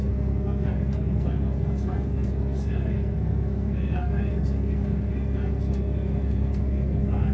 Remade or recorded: remade